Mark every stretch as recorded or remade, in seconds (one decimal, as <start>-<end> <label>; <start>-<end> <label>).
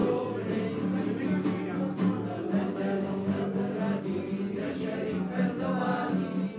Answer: 0.0-2.7 recorded; 2.7-3.8 remade; 3.8-6.6 recorded